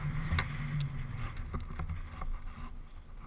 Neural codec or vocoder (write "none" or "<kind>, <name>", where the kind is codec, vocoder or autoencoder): none